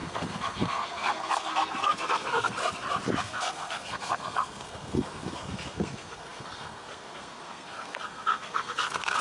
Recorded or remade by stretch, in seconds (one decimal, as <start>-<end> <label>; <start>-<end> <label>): 0.0-2.6 remade; 2.6-3.2 recorded; 3.2-9.2 remade